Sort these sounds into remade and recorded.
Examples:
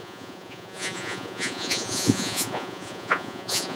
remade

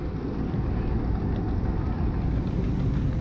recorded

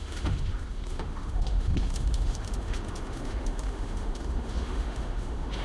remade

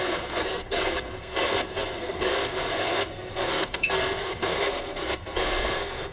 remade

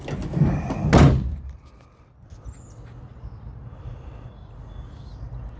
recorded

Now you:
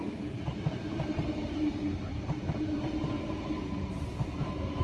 remade